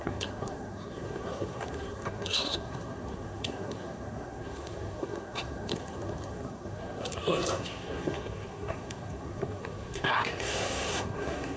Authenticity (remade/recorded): remade